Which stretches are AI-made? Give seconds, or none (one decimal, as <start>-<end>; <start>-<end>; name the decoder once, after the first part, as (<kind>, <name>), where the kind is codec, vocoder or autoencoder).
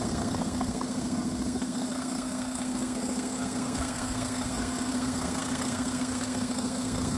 0.0-7.2 (codec, SNAC)